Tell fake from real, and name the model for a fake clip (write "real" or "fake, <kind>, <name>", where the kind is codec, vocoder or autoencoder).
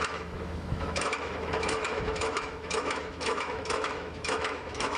fake, autoencoder, DAC-VAE